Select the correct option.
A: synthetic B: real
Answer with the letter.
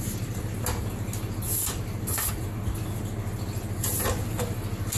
B